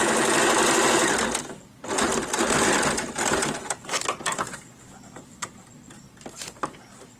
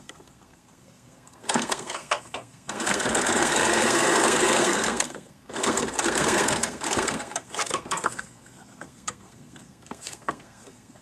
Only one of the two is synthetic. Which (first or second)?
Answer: second